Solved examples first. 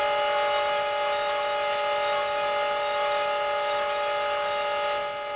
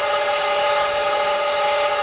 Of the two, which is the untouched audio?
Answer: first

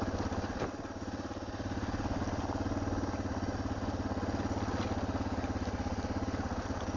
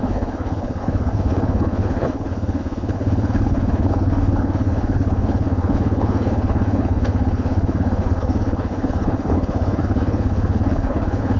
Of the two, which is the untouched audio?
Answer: first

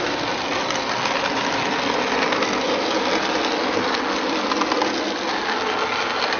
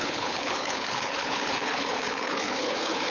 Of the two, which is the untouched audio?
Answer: first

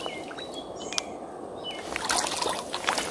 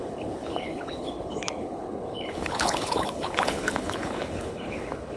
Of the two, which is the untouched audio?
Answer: first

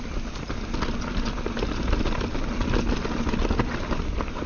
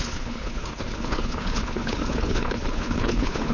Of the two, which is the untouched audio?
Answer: first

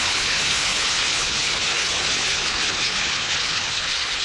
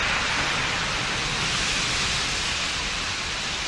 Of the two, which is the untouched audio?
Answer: second